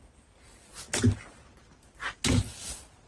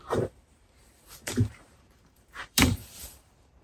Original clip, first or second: first